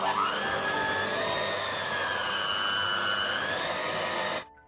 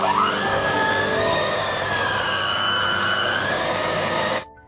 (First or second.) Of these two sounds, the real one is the first